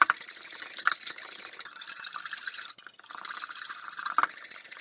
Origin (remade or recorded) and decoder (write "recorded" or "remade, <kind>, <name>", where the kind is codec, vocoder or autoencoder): recorded